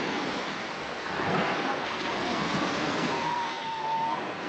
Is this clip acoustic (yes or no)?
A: no